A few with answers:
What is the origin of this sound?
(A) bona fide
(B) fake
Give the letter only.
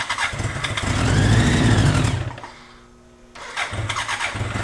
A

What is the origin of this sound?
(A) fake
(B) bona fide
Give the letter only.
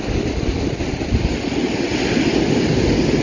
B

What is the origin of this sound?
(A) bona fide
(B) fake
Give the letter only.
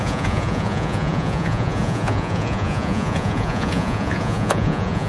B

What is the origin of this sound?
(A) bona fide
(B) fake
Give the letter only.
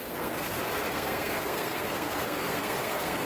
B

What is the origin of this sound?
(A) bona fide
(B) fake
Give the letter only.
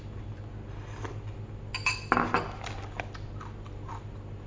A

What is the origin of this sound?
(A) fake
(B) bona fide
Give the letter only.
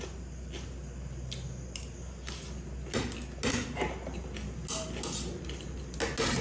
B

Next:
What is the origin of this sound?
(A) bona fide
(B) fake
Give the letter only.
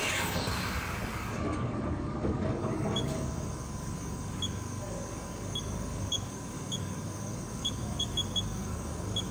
B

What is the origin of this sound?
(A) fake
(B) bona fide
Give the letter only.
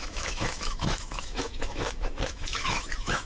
A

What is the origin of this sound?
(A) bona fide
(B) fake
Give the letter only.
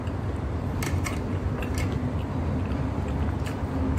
A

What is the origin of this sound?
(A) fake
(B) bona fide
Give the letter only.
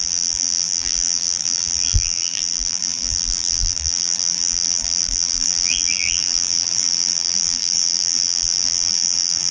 A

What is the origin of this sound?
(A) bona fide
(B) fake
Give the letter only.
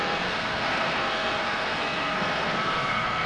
B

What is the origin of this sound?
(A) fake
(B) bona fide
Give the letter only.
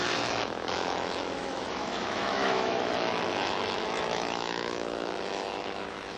A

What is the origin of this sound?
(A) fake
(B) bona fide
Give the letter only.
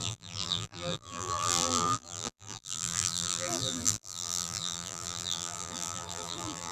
A